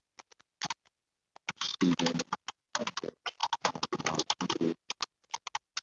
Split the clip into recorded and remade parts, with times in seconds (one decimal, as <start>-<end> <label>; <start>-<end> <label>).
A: 0.0-5.8 recorded